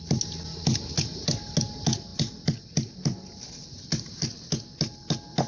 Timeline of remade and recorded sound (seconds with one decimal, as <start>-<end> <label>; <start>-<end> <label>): 0.0-5.5 recorded